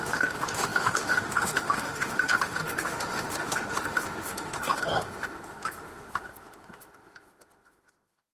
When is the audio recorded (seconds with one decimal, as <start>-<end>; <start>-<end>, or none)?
none